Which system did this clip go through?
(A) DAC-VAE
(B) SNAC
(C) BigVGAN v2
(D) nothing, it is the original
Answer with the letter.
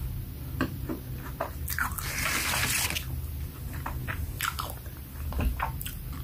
D